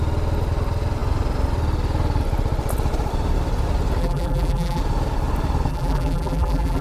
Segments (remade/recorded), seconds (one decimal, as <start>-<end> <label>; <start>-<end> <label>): 0.0-4.0 recorded; 4.0-4.8 remade; 4.8-5.7 recorded; 5.7-6.8 remade